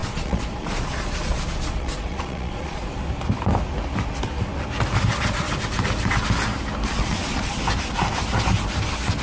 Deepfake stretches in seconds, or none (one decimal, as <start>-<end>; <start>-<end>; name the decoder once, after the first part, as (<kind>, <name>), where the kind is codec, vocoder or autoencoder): 0.0-2.9 (vocoder, Vocos); 6.9-7.6